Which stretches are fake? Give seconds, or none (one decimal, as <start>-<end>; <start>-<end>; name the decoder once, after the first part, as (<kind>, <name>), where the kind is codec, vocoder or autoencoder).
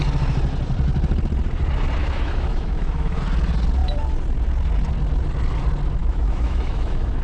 2.0-3.2 (autoencoder, DAC-VAE); 6.0-7.2